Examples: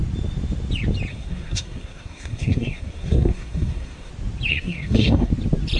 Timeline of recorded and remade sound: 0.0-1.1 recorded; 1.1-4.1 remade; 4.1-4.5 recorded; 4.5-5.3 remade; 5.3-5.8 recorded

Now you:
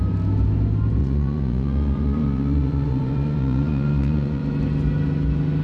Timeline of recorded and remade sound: 0.0-1.0 recorded; 1.0-4.4 remade; 4.4-5.6 recorded

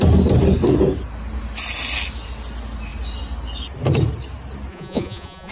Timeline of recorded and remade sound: 0.0-4.7 recorded; 4.7-5.5 remade

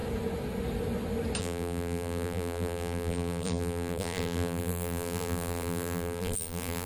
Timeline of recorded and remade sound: 0.0-1.4 recorded; 1.4-6.9 remade

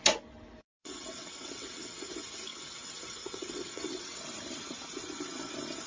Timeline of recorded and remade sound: 0.0-0.8 recorded; 0.8-2.1 remade; 2.1-2.5 recorded; 2.5-4.2 remade; 4.2-5.9 recorded

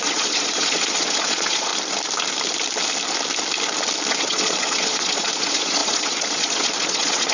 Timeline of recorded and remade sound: 0.0-1.7 remade; 1.7-4.1 recorded; 4.1-7.3 remade

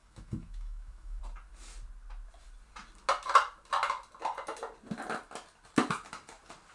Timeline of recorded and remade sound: 0.0-1.2 remade; 1.2-6.7 recorded

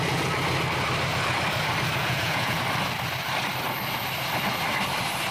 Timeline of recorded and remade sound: 0.0-2.0 recorded; 2.0-2.6 remade; 2.6-5.3 recorded